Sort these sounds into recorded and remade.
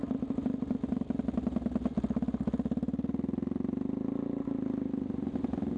recorded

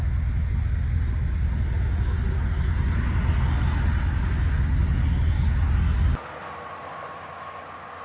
recorded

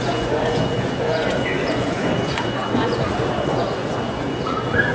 remade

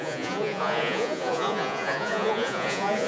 remade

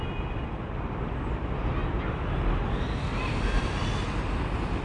recorded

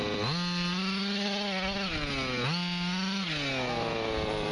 recorded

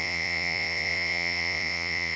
remade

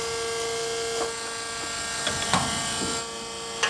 recorded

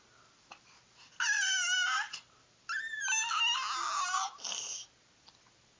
recorded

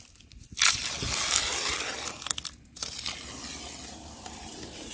recorded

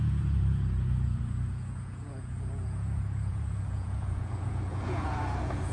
remade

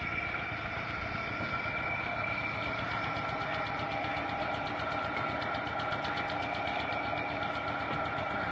recorded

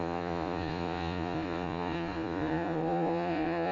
remade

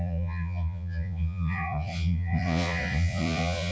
remade